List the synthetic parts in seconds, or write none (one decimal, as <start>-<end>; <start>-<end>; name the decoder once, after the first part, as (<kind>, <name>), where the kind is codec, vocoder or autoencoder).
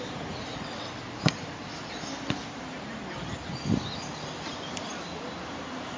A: 0.5-1.0 (vocoder, WaveNeXt)